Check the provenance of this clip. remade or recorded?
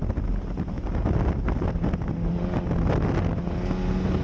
recorded